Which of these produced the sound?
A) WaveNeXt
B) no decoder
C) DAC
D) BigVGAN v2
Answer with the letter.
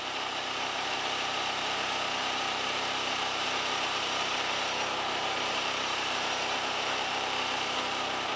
D